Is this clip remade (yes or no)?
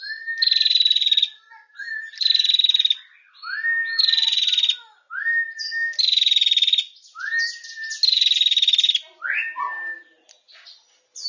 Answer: no